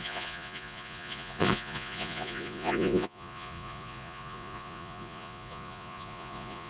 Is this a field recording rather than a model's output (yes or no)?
no